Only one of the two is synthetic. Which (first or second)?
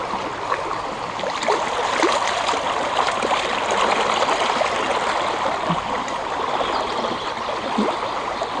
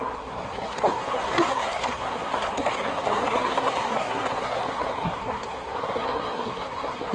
second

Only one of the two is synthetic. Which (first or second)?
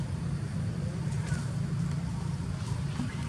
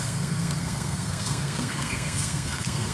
second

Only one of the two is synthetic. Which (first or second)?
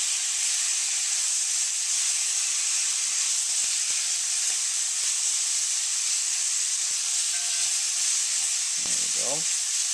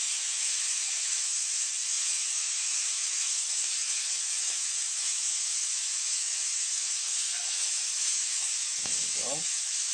second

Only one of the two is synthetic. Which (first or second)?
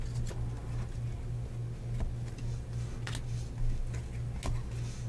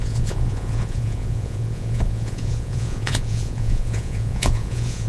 second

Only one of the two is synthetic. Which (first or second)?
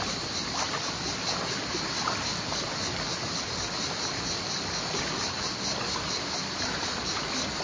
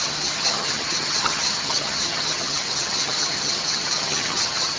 second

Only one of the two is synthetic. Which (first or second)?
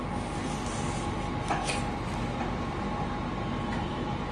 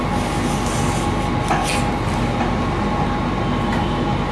first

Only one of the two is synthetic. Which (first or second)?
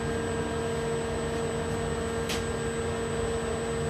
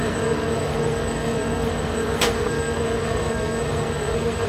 second